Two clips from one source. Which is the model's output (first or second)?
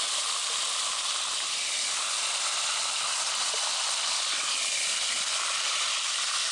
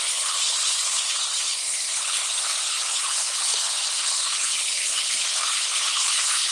second